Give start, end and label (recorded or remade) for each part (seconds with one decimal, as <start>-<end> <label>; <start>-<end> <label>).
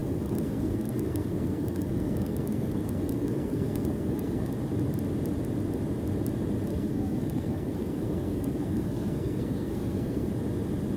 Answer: 0.0-4.5 remade; 4.5-6.7 recorded; 6.7-10.3 remade; 10.3-11.0 recorded